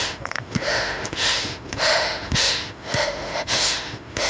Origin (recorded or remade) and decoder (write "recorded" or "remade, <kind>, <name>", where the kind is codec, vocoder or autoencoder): remade, autoencoder, DAC-VAE